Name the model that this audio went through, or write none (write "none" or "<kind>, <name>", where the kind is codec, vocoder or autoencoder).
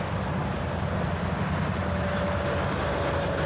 none